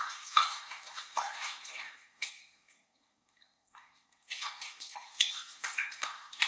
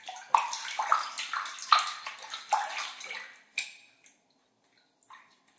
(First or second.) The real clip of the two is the second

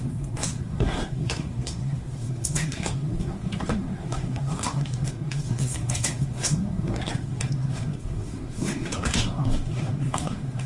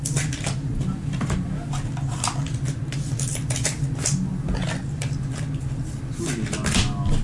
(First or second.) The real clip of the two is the second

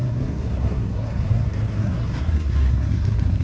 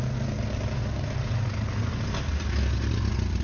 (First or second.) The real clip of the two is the second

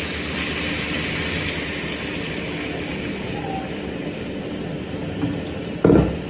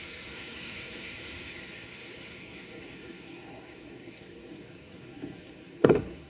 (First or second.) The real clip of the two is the first